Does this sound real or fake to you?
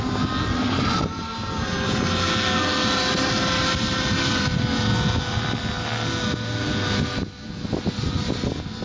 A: real